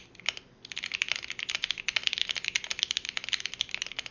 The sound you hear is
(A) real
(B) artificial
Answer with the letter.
A